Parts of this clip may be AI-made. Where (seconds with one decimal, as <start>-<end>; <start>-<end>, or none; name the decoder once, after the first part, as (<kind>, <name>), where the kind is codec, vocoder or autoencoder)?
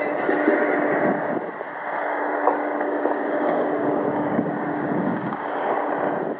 2.1-5.9 (codec, DAC)